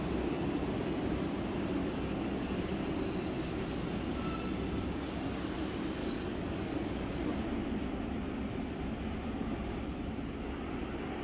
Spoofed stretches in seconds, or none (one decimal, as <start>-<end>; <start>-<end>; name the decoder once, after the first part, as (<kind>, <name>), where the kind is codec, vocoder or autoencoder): 1.8-2.7 (codec, DAC); 6.0-7.1